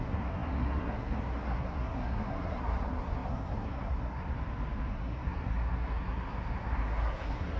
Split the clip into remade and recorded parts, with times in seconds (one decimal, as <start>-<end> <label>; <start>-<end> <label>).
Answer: 0.0-4.3 remade; 4.3-4.9 recorded; 4.9-7.6 remade